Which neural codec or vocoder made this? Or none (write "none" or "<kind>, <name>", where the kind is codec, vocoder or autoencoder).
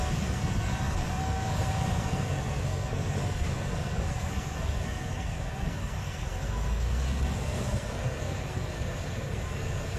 codec, SNAC